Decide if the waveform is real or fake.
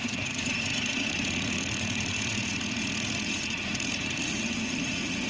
fake